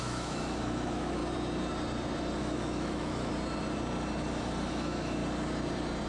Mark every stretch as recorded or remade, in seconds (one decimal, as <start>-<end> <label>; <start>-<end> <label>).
0.0-1.2 remade; 1.2-2.4 recorded; 2.4-3.3 remade; 3.3-4.7 recorded; 4.7-5.2 remade; 5.2-6.1 recorded

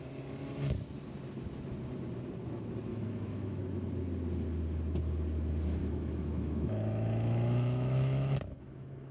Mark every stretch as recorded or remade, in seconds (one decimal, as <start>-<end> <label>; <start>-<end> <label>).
0.0-2.9 recorded; 2.9-3.6 remade; 3.6-5.8 recorded; 5.8-9.1 remade

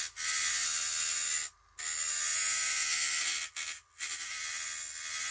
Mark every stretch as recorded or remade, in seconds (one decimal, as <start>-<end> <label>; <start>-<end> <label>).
0.0-5.3 recorded

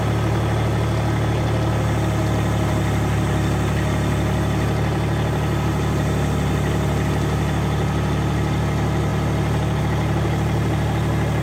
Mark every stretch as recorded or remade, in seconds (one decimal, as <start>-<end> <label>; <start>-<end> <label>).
0.0-11.4 recorded

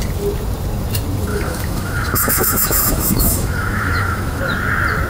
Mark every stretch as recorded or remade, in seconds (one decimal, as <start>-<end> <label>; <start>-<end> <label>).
0.0-1.3 recorded; 1.3-4.4 remade; 4.4-5.1 recorded

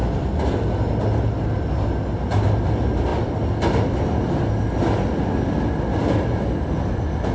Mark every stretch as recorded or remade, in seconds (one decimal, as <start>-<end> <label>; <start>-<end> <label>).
0.0-7.3 recorded